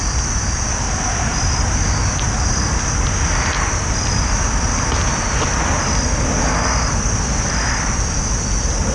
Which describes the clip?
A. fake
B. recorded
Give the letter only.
B